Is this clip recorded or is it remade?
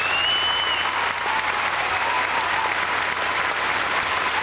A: recorded